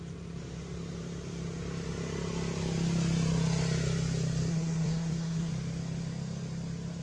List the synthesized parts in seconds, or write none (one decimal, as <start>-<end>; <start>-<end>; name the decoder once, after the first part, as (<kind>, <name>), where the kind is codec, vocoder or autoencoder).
4.5-5.5 (codec, SNAC)